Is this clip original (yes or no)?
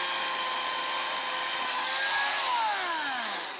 yes